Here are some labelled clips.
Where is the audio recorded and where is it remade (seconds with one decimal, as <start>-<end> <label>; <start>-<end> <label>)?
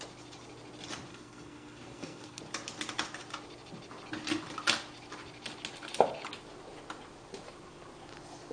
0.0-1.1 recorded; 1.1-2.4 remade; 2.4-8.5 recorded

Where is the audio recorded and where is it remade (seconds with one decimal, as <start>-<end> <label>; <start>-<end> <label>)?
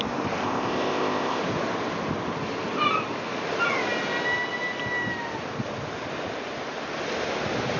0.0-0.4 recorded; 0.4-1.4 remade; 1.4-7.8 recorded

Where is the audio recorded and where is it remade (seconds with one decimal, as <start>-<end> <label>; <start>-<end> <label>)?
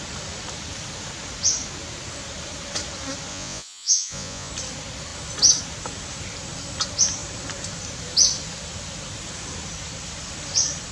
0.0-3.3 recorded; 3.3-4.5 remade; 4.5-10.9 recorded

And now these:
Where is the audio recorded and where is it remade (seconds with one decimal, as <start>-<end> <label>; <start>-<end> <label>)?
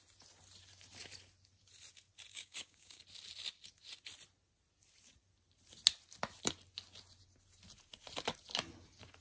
0.0-2.3 recorded; 2.3-3.0 remade; 3.0-9.2 recorded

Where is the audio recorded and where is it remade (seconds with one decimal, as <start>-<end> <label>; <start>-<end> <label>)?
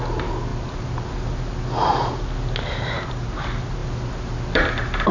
0.0-5.1 recorded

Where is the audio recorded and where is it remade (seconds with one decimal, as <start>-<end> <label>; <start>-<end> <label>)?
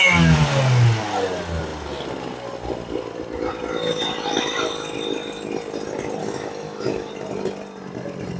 0.0-6.2 recorded; 6.2-7.1 remade; 7.1-8.4 recorded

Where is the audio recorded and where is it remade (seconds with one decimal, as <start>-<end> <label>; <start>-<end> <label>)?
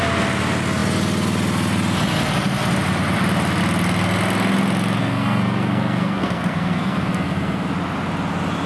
0.0-5.0 recorded; 5.0-7.7 remade; 7.7-8.7 recorded